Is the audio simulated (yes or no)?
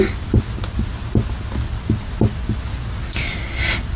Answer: no